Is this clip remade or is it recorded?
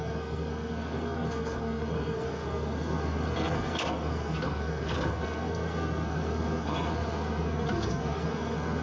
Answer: remade